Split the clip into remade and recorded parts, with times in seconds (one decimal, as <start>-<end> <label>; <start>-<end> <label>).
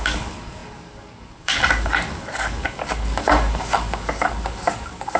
0.0-5.2 remade